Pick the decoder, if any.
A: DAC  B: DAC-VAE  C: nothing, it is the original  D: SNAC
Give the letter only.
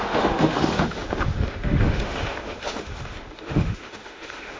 B